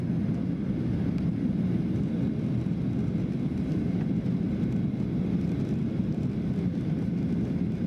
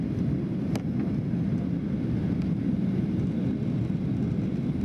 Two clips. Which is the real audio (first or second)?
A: first